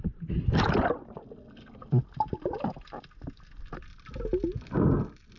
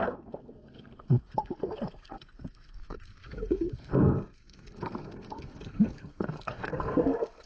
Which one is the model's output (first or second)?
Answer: second